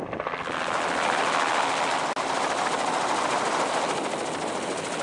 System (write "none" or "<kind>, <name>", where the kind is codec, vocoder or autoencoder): none